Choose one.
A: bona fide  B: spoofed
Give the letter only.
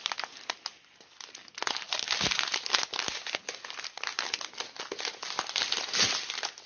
A